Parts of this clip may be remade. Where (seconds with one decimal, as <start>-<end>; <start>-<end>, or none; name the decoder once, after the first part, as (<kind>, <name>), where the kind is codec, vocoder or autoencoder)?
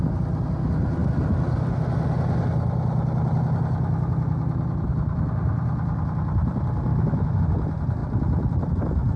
6.9-7.4 (autoencoder, DAC-VAE)